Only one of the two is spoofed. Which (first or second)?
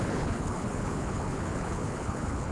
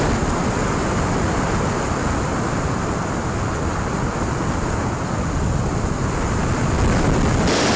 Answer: first